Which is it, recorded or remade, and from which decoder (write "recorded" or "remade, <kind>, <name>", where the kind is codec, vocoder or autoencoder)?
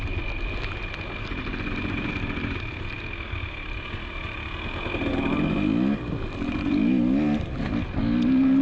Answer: recorded